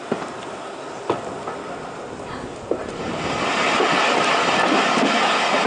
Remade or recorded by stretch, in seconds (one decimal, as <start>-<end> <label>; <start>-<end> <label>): 0.0-5.7 recorded